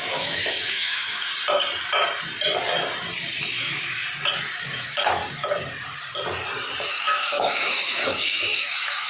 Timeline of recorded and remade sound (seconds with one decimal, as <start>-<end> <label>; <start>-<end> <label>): 0.0-1.3 remade; 1.3-3.4 recorded; 3.4-4.0 remade; 4.0-4.6 recorded; 4.6-5.2 remade; 5.2-6.9 recorded; 6.9-9.1 remade